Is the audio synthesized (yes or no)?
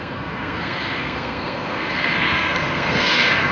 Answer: yes